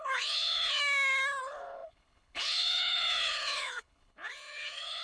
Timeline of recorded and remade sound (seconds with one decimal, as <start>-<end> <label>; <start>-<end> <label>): 0.0-0.8 remade; 0.8-1.4 recorded; 1.4-5.0 remade